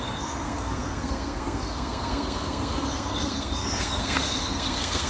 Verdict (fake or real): fake